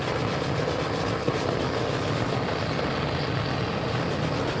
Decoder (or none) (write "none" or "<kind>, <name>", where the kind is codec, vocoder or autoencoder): none